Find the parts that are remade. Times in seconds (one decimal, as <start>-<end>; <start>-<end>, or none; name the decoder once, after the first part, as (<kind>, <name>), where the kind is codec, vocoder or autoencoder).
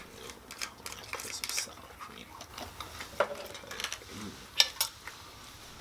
none